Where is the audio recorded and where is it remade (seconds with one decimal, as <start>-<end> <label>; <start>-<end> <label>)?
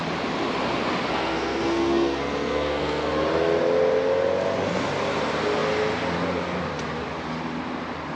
0.0-1.1 recorded; 1.1-3.1 remade; 3.1-8.1 recorded